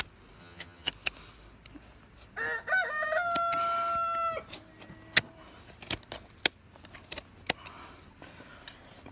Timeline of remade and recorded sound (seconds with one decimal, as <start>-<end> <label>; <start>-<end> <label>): 0.0-0.4 recorded; 0.4-0.9 remade; 0.9-9.1 recorded